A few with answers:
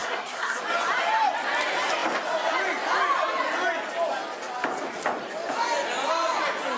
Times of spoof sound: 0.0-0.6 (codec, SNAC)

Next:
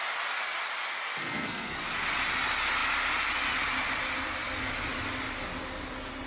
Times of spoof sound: 1.2-1.8 (codec, SNAC)

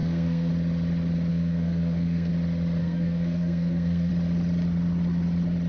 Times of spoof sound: 0.0-0.5 (codec, SNAC); 1.3-2.3; 2.8-4.1

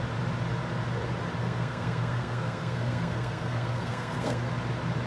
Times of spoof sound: 1.4-4.5 (codec, SNAC)